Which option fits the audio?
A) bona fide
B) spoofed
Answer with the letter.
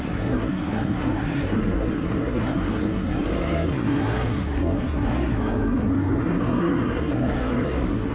B